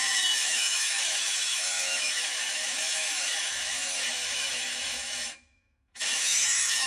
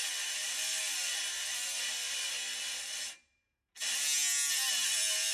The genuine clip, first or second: second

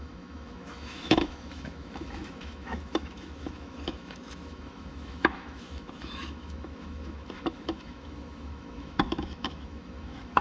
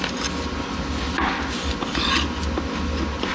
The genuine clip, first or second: second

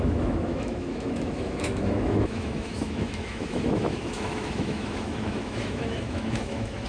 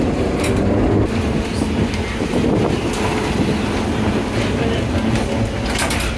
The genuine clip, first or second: second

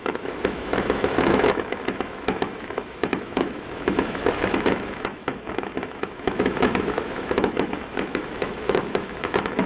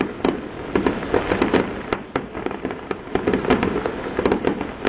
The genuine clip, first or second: second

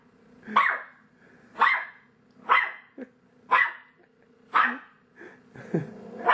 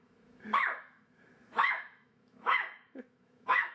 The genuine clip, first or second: first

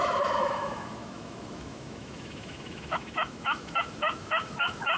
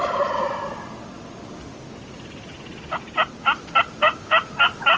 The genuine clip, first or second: second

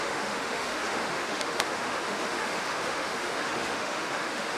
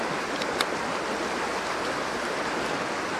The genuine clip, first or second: second